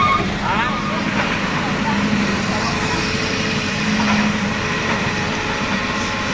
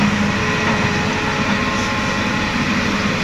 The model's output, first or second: first